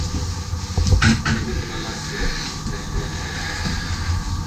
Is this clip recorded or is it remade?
recorded